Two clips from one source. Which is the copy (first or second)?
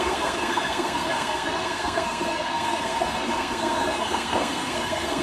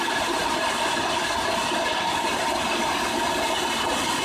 first